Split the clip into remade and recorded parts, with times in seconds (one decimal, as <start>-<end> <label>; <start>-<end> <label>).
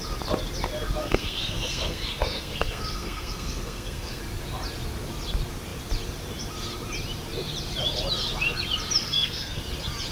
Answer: 0.0-1.0 recorded; 1.0-4.2 remade; 4.2-9.0 recorded; 9.0-9.6 remade; 9.6-10.1 recorded